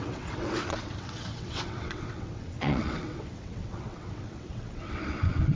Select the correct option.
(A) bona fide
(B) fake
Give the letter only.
B